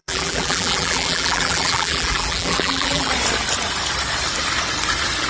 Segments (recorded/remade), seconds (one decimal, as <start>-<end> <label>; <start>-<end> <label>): 0.0-3.1 remade; 3.1-5.3 recorded